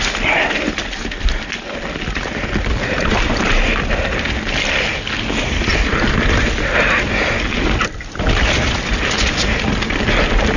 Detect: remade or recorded recorded